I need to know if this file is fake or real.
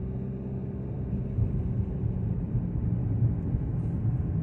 real